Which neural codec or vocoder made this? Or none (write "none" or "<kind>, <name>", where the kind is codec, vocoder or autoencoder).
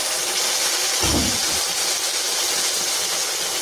none